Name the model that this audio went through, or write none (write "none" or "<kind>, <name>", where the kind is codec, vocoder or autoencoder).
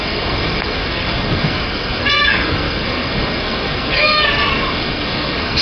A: codec, SNAC